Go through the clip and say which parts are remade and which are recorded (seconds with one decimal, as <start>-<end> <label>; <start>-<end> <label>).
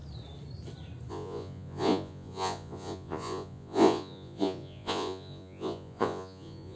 0.0-1.1 recorded; 1.1-6.8 remade